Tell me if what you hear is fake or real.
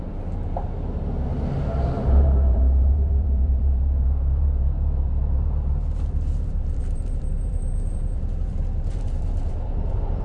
fake